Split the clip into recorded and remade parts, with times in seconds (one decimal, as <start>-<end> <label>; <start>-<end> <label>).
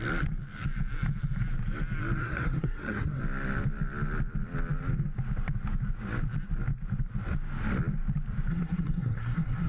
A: 0.0-2.2 recorded; 2.2-3.2 remade; 3.2-8.5 recorded; 8.5-9.7 remade